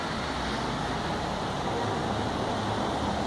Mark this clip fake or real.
real